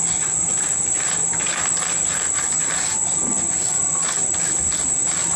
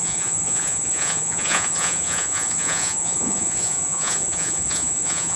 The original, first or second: first